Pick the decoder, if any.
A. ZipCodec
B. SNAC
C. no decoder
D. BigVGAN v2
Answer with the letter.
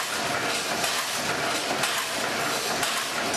C